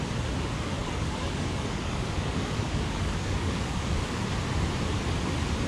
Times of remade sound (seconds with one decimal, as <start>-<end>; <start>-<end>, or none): 0.8-4.2